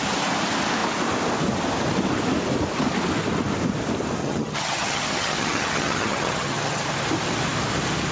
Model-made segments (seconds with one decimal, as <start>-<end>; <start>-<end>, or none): 4.2-6.8